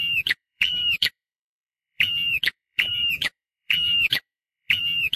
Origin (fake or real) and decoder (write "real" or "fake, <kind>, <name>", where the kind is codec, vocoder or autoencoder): fake, vocoder, BigVGAN v2